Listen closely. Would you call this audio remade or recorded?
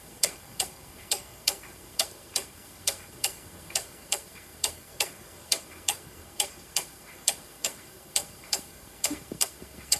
remade